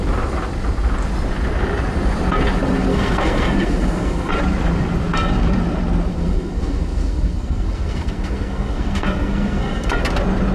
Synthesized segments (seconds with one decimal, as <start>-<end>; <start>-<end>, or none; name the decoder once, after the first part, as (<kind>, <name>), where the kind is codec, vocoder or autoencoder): 2.9-4.3 (codec, SNAC); 6.1-10.0